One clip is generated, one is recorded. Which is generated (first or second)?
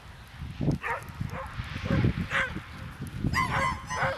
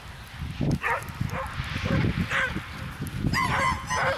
second